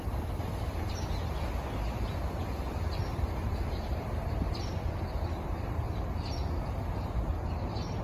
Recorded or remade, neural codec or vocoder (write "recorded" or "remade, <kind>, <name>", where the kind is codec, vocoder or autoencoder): recorded